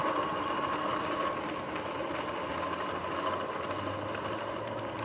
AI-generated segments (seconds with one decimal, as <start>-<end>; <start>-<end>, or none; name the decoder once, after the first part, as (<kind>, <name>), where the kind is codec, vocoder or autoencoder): none